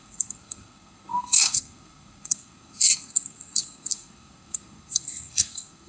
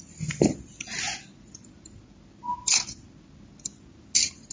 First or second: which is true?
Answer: second